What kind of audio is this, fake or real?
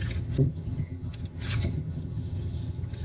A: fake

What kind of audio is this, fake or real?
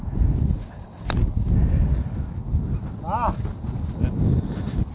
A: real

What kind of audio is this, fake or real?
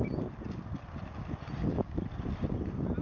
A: real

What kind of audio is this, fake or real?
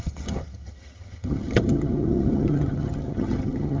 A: fake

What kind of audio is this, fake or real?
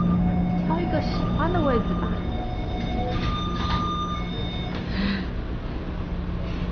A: real